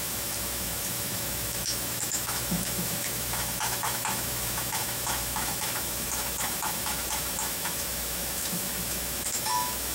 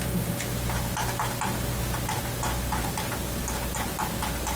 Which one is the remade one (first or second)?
first